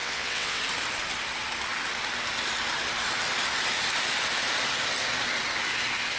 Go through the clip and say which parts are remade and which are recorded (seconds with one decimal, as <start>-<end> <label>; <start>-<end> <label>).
0.0-0.6 remade; 0.6-6.2 recorded